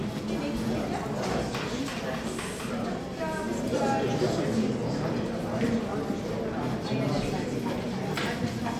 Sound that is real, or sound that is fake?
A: real